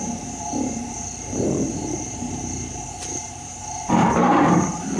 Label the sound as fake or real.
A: fake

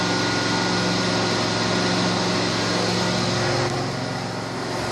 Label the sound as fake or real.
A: real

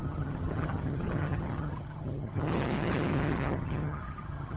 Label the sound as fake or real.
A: fake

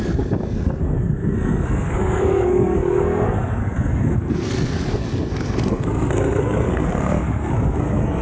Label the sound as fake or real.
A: fake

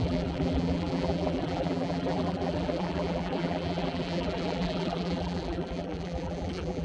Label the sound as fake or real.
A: fake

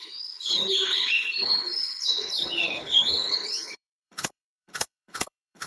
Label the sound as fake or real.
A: fake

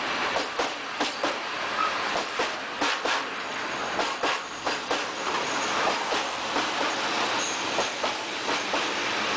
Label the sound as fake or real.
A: fake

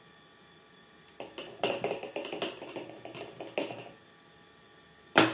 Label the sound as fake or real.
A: real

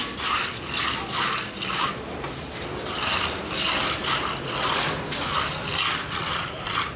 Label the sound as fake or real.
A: real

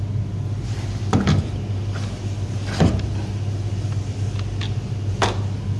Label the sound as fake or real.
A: real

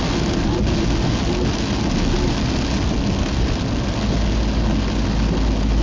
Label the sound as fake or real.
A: real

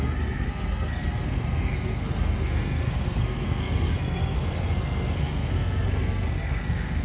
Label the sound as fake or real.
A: fake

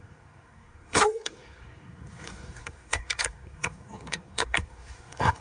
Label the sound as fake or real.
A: fake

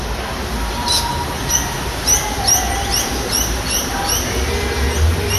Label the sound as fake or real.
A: real